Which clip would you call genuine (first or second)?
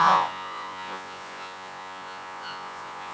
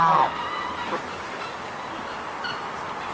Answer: second